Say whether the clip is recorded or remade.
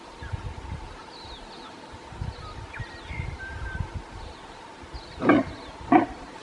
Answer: recorded